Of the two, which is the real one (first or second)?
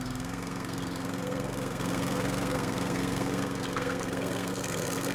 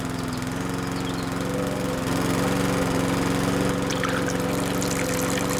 second